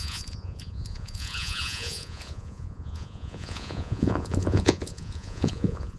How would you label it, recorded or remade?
remade